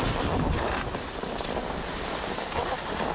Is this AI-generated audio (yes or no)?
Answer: no